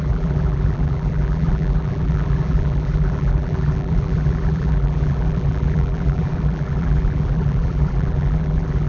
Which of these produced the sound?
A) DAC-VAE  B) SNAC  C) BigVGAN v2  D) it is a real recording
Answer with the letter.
C